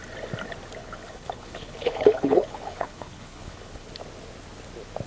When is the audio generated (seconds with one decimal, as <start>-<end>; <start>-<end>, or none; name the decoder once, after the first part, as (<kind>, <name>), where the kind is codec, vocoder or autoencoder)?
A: 0.8-3.9 (codec, HILCodec)